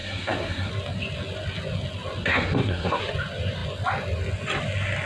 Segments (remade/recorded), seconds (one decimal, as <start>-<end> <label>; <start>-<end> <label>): 0.0-0.7 remade; 0.7-2.2 recorded; 2.2-3.0 remade; 3.0-5.1 recorded